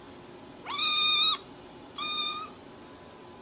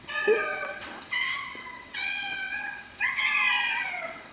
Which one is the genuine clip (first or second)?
first